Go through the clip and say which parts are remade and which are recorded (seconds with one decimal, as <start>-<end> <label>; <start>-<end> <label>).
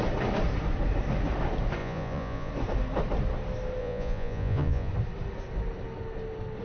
0.0-1.8 recorded; 1.8-2.5 remade; 2.5-3.8 recorded; 3.8-4.9 remade; 4.9-6.6 recorded